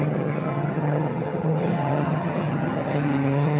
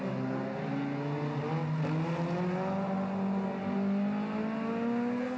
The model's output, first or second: first